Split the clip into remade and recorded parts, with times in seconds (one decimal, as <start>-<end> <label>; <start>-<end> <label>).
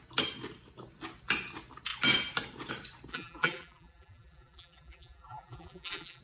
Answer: 0.0-3.1 recorded; 3.1-6.2 remade